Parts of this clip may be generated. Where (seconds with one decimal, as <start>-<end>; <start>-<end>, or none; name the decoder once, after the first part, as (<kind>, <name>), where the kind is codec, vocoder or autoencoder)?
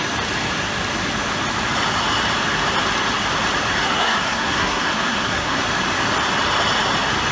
3.8-5.6 (codec, SNAC)